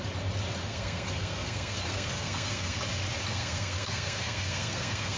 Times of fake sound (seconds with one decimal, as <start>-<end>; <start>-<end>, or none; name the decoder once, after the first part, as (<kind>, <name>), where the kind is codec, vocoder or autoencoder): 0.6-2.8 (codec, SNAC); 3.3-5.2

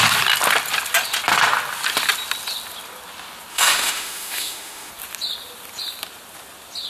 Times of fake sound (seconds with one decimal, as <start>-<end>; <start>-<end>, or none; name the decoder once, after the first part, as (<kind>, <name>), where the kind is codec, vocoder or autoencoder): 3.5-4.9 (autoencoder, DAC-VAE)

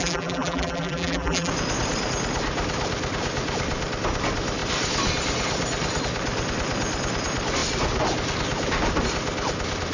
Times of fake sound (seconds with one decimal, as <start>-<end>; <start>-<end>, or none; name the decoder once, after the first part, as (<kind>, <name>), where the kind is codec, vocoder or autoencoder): 0.0-1.5 (vocoder, BigVGAN v2)